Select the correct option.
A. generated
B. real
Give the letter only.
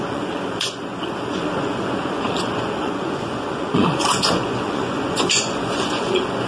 A